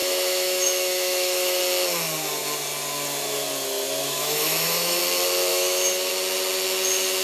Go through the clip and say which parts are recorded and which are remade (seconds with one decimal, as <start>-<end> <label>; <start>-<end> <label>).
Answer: 0.0-1.6 remade; 1.6-4.0 recorded; 4.0-5.0 remade; 5.0-5.5 recorded; 5.5-6.1 remade; 6.1-7.2 recorded